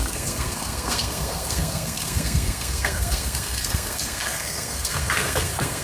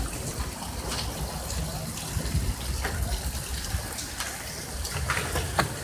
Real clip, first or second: second